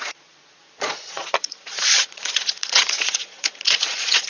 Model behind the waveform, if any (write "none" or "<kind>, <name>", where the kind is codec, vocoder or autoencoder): vocoder, Vocos